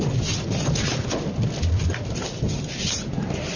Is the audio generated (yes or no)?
no